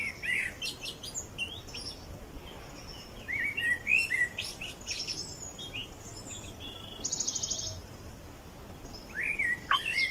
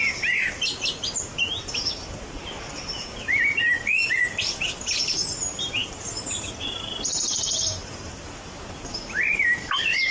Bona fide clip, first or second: first